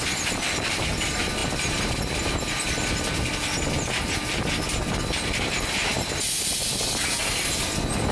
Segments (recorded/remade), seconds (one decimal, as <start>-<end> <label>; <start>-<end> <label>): 0.0-8.1 recorded